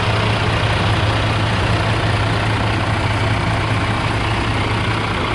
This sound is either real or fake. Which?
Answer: real